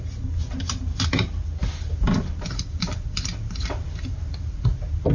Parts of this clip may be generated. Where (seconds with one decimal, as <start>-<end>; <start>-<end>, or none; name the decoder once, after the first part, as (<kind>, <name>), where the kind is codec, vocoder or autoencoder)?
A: none

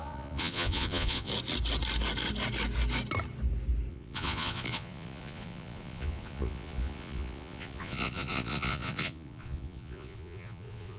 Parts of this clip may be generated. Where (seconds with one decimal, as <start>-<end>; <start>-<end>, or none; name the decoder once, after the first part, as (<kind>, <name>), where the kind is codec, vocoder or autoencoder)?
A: 0.0-1.3 (vocoder, Vocos); 3.9-11.0

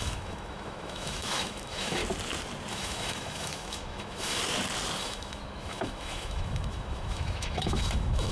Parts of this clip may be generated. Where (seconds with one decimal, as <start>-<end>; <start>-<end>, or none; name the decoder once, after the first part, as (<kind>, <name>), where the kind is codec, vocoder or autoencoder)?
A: 0.0-2.0 (autoencoder, DAC-VAE); 2.7-4.4; 5.0-8.3

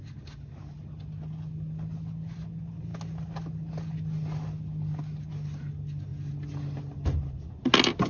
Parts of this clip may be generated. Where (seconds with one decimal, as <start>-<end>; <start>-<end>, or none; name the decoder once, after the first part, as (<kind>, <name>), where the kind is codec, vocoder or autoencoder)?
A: none

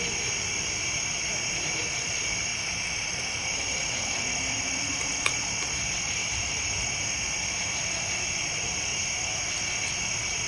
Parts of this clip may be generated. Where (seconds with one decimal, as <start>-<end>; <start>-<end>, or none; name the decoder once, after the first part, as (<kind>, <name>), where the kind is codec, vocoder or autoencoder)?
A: 6.2-7.0 (vocoder, BigVGAN v2); 8.9-9.5

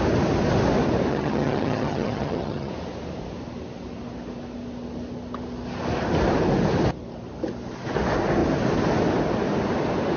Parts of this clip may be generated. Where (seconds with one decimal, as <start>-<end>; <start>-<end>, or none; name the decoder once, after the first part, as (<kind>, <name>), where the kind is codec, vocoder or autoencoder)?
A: 1.1-2.7 (vocoder, HiFi-GAN)

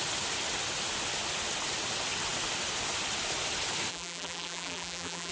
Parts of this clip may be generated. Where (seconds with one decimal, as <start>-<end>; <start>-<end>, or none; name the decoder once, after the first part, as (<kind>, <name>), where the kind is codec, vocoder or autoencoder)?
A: 3.9-5.3 (vocoder, BigVGAN v2)

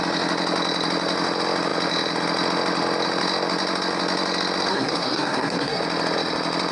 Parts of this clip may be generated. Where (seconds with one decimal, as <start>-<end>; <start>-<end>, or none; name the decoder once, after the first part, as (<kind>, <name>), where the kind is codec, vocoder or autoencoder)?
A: 4.7-5.8 (codec, SNAC)